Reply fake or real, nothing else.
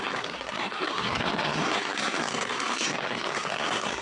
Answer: fake